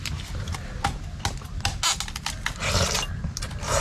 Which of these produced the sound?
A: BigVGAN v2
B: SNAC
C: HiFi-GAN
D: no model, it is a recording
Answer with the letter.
D